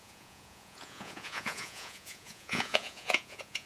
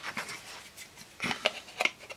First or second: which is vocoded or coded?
first